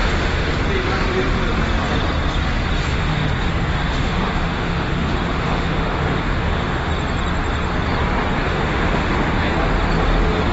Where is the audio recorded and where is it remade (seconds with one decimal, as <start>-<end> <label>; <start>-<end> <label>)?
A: 0.0-0.5 remade; 0.5-2.9 recorded; 2.9-3.4 remade; 3.4-3.8 recorded; 3.8-6.9 remade; 6.9-8.5 recorded; 8.5-9.5 remade; 9.5-10.5 recorded